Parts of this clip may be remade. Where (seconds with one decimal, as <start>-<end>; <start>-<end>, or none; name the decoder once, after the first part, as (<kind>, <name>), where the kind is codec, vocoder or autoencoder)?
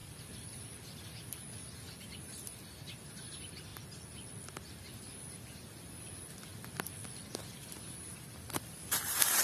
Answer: 0.0-3.7 (vocoder, BigVGAN v2); 5.0-6.5; 7.4-9.4